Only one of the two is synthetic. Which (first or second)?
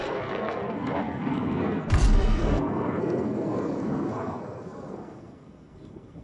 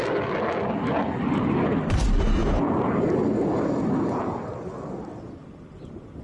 first